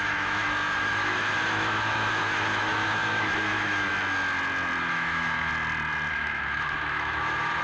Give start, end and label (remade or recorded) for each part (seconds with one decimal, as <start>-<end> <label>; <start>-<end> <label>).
0.0-3.9 remade; 3.9-4.8 recorded; 4.8-5.5 remade; 5.5-6.1 recorded; 6.1-7.6 remade